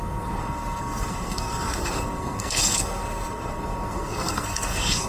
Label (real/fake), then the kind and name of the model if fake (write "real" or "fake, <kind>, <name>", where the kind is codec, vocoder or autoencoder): fake, codec, SNAC